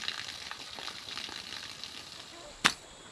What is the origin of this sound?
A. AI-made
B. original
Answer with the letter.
B